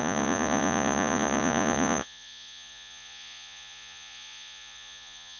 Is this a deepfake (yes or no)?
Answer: yes